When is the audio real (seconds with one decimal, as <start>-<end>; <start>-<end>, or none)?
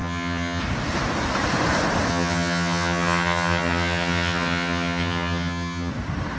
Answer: 0.6-2.1; 5.9-6.4